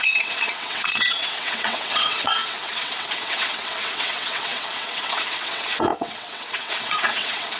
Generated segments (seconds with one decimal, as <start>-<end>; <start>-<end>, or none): 0.0-7.6